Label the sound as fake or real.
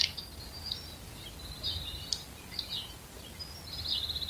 real